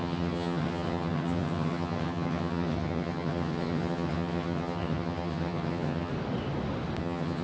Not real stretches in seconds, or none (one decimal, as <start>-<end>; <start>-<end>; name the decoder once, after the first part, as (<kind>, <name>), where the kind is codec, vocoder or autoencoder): 0.0-6.1 (vocoder, HiFi-GAN); 7.0-7.4